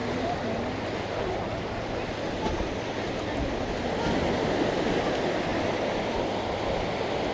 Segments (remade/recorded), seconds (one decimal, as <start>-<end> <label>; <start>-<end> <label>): 0.0-7.3 recorded